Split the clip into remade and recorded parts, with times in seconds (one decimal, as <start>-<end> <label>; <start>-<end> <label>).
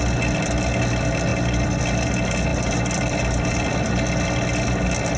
0.0-1.3 recorded; 1.3-2.1 remade; 2.1-2.5 recorded; 2.5-3.2 remade; 3.2-5.2 recorded